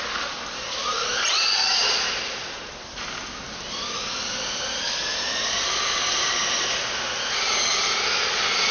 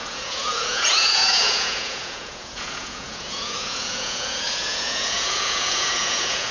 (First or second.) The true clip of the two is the first